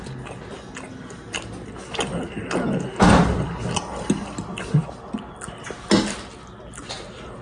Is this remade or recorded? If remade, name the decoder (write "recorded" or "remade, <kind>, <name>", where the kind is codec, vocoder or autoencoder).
recorded